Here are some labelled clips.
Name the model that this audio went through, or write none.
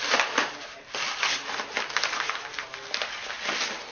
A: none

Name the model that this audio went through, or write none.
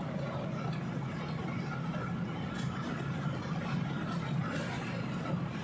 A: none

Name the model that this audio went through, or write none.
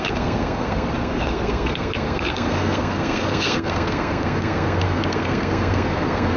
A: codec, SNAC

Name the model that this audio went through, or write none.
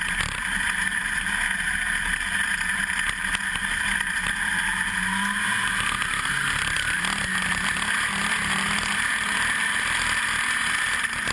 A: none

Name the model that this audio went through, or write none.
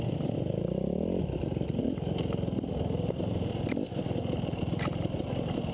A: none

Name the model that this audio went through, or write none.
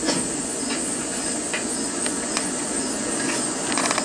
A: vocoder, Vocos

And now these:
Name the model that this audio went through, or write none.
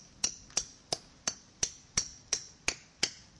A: none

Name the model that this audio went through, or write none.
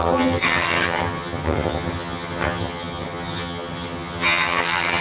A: vocoder, HiFi-GAN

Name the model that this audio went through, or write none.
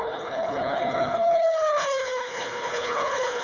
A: codec, HILCodec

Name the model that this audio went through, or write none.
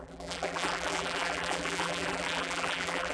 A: vocoder, BigVGAN v2